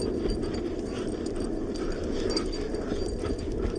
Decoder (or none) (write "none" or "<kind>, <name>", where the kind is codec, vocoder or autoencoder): none